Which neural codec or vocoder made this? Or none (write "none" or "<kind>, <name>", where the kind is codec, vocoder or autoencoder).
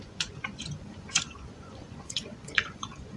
vocoder, Vocos